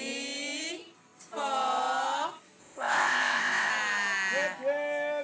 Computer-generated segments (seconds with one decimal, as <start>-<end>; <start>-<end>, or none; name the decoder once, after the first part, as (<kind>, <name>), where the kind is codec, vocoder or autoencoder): 2.6-3.7 (codec, ZipCodec)